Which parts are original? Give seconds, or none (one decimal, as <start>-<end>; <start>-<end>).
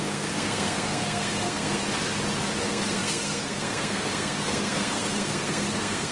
1.8-2.6